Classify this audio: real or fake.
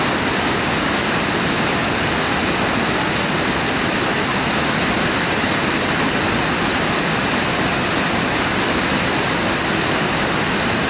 real